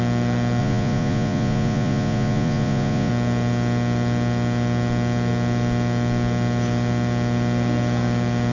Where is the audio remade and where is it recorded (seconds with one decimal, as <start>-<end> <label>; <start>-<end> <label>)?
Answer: 0.0-0.6 recorded; 0.6-3.1 remade; 3.1-8.5 recorded

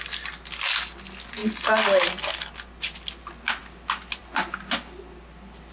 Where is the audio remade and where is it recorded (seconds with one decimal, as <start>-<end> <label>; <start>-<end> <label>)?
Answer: 0.0-5.7 recorded

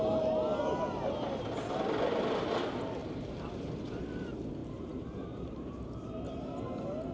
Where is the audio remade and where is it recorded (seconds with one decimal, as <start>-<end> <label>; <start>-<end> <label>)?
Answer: 0.0-3.0 recorded; 3.0-3.9 remade; 3.9-4.6 recorded; 4.6-6.1 remade; 6.1-7.1 recorded

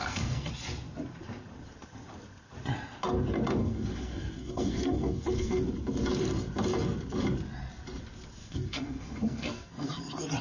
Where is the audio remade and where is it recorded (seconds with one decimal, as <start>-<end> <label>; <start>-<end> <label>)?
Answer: 0.0-0.5 remade; 0.5-3.6 recorded; 3.6-5.6 remade; 5.6-8.4 recorded; 8.4-9.9 remade; 9.9-10.4 recorded

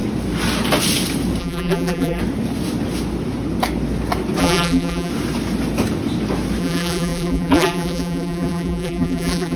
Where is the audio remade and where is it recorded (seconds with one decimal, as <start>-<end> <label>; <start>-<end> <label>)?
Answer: 0.0-1.4 recorded; 1.4-2.2 remade; 2.2-4.4 recorded; 4.4-5.1 remade; 5.1-6.6 recorded; 6.6-9.6 remade

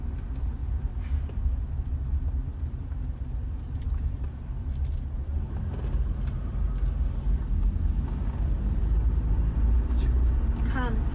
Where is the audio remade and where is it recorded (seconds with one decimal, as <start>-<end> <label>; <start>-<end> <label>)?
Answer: 0.0-0.6 recorded; 0.6-1.4 remade; 1.4-1.9 recorded; 1.9-6.6 remade; 6.6-11.1 recorded

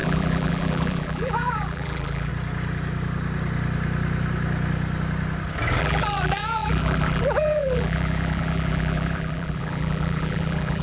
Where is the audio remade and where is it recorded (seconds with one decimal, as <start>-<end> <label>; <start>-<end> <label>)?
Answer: 0.0-2.3 remade; 2.3-5.8 recorded; 5.8-10.8 remade